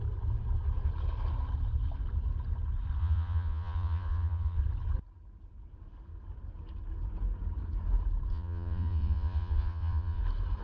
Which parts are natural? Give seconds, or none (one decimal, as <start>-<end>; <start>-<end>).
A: 0.0-3.0; 4.6-8.3; 10.2-10.6